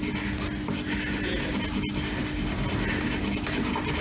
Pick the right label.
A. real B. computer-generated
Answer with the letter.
A